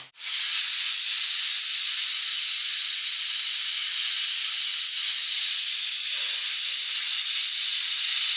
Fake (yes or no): no